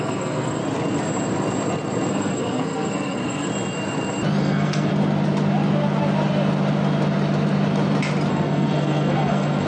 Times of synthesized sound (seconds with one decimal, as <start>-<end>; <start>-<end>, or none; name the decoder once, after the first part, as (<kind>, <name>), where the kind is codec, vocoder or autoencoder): 0.0-0.6 (codec, SNAC); 2.1-3.5; 4.4-4.9; 8.3-9.7